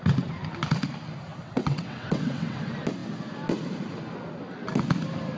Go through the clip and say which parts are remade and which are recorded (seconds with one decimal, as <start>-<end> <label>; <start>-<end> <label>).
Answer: 0.0-1.3 recorded; 1.3-2.6 remade; 2.6-5.4 recorded